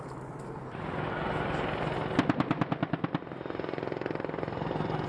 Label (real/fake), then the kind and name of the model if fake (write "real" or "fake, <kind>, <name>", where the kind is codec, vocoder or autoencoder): real